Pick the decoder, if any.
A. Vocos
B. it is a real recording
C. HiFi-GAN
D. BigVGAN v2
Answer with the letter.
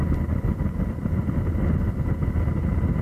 B